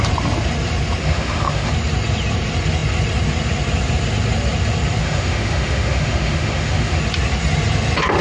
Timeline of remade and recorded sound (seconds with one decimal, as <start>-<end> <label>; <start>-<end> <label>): 0.0-1.0 recorded; 1.0-1.7 remade; 1.7-5.0 recorded; 5.0-7.0 remade; 7.0-8.2 recorded